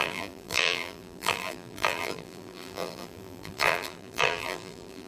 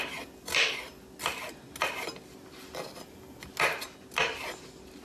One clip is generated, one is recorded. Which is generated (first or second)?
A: first